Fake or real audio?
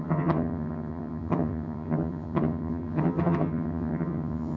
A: fake